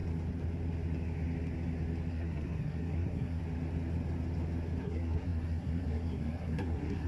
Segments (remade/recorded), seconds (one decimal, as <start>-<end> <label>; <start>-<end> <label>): 0.0-2.1 recorded; 2.1-3.4 remade; 3.4-4.8 recorded; 4.8-7.1 remade